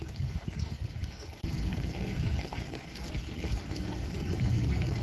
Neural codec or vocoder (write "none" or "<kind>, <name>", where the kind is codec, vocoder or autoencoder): codec, SNAC